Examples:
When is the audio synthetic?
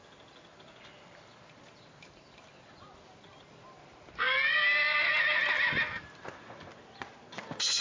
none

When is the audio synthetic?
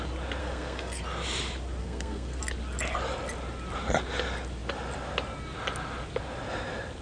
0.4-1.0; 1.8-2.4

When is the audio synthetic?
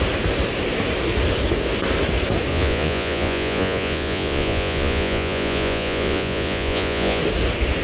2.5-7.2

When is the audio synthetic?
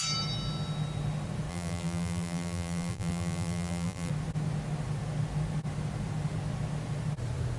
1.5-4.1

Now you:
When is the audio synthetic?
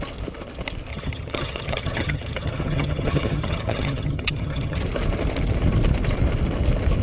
0.9-4.8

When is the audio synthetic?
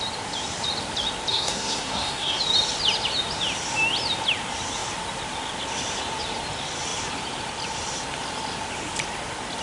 1.3-2.4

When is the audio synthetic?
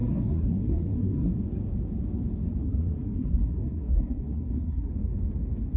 0.0-1.3; 2.6-4.9